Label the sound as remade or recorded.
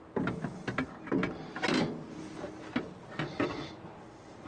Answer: recorded